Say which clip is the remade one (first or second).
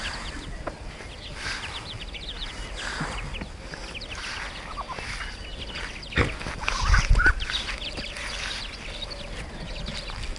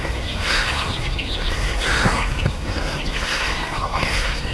second